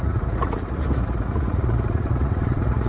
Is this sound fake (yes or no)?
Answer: yes